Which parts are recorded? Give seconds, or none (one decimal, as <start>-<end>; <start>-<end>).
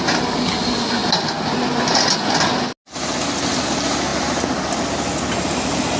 0.0-6.0